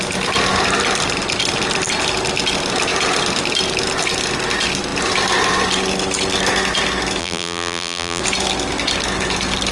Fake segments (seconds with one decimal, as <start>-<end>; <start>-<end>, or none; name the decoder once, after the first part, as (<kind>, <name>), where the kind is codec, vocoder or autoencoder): 7.2-8.2 (vocoder, BigVGAN v2)